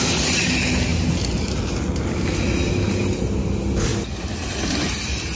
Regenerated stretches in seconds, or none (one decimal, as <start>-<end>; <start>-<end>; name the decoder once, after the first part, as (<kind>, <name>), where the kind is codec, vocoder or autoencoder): none